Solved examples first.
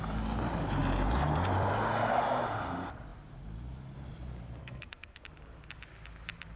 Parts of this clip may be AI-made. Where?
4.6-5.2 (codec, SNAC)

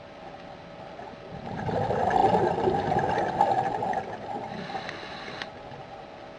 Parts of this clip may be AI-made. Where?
none

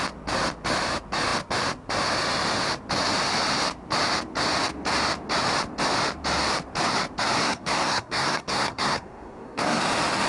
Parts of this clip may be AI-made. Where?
7.4-9.8 (codec, SNAC)